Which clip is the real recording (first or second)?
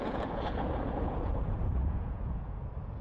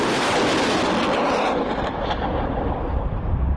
second